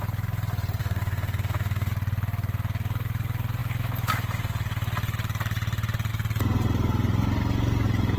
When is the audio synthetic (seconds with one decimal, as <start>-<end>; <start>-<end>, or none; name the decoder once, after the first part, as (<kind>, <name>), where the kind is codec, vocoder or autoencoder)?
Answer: 0.8-1.9 (autoencoder, DAC-VAE)